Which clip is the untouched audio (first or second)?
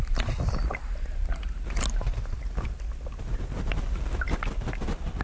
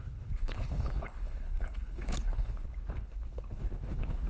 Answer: first